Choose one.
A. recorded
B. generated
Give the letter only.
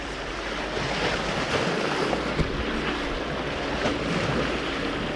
A